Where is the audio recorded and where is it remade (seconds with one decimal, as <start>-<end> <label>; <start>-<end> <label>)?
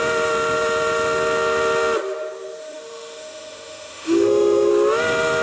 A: 0.0-2.6 recorded; 2.6-4.7 remade; 4.7-5.4 recorded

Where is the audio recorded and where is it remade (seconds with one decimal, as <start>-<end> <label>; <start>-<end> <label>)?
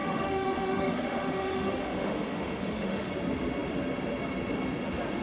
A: 0.0-3.1 remade; 3.1-5.2 recorded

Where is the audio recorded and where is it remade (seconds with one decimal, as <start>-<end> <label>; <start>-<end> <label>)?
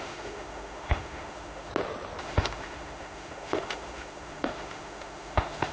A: 0.0-1.7 remade; 1.7-2.2 recorded; 2.2-5.7 remade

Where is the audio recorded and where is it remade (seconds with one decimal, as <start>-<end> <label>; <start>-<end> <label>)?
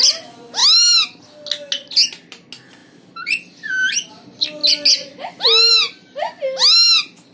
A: 0.0-7.3 recorded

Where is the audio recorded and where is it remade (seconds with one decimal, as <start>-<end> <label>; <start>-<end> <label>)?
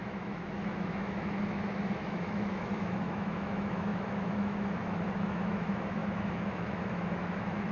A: 0.0-7.7 remade